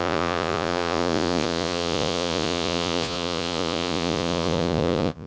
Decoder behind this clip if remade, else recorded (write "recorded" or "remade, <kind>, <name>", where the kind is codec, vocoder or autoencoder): remade, vocoder, Vocos